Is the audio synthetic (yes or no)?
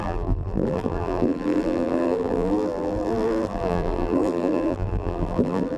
yes